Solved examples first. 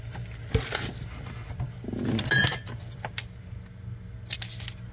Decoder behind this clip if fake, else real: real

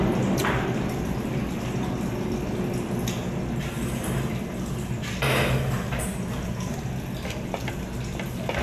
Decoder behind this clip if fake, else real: real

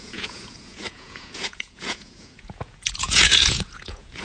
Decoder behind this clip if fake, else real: fake, vocoder, Vocos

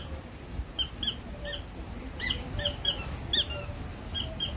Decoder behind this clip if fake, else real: real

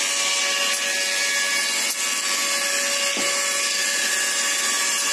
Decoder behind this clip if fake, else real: real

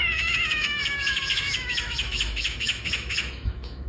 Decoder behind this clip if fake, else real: fake, autoencoder, DAC-VAE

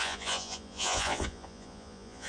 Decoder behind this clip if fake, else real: fake, vocoder, Vocos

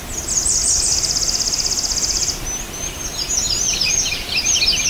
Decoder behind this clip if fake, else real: real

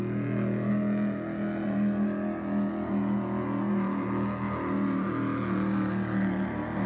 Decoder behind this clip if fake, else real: real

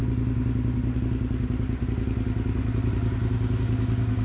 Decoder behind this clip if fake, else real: real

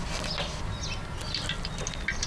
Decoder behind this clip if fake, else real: real